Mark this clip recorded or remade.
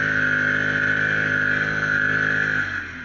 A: recorded